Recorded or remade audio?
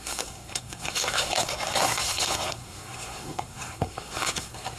remade